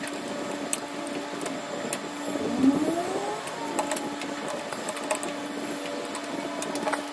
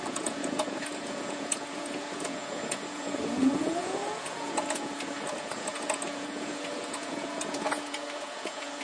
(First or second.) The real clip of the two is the first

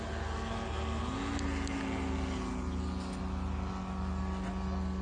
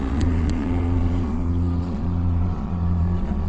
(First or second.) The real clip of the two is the first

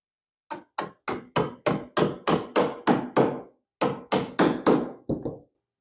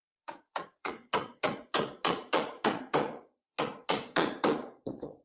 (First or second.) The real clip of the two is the first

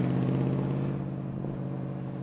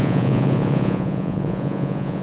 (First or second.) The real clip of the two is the first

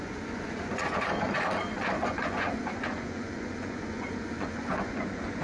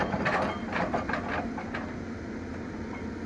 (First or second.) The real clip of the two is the second